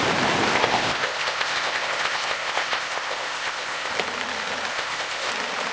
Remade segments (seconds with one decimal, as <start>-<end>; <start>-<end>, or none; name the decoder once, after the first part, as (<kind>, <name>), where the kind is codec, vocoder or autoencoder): 0.5-3.9 (codec, ZipCodec); 4.7-5.3